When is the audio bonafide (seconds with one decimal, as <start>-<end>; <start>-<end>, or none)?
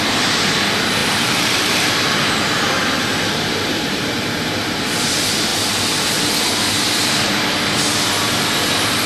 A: 5.5-8.7